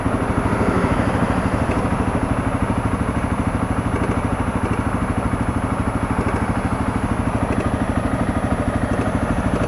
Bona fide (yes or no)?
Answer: yes